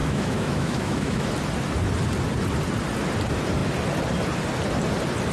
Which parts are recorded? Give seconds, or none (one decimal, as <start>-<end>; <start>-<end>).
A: 1.3-5.3

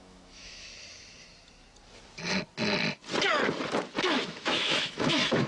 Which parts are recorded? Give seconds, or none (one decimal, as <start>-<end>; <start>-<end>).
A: 0.7-4.0